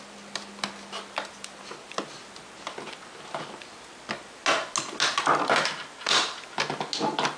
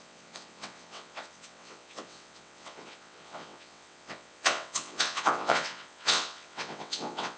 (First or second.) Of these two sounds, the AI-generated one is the second